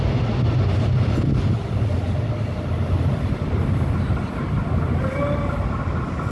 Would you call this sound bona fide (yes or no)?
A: yes